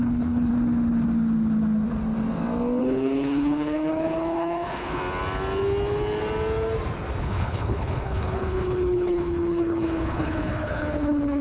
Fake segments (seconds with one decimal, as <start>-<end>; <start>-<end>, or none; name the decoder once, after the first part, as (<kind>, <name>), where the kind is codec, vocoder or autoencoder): 0.0-0.5 (codec, HILCodec); 2.8-5.0; 7.2-11.4